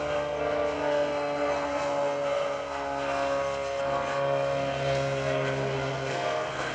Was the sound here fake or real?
fake